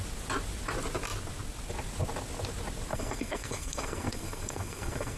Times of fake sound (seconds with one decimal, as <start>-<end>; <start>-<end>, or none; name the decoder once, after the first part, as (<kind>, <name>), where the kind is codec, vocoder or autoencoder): 2.9-5.2 (codec, SNAC)